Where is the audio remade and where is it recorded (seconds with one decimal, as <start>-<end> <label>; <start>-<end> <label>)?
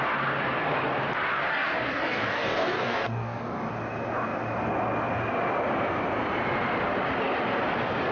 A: 0.0-1.5 recorded; 1.5-3.7 remade; 3.7-8.1 recorded